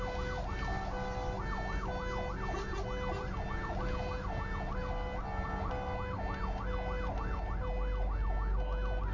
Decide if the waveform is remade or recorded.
recorded